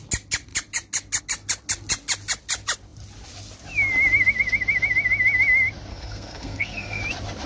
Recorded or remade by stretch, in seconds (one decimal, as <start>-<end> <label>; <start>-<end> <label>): 0.0-5.9 recorded; 5.9-7.0 remade; 7.0-7.5 recorded